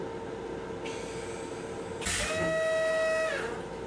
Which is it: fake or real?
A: real